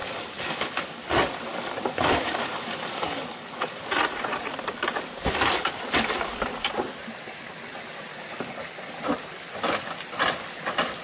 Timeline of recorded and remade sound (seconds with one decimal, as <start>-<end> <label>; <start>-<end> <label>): 0.0-0.7 remade; 0.7-1.5 recorded; 1.5-3.8 remade; 3.8-8.1 recorded; 8.1-8.7 remade; 8.7-11.0 recorded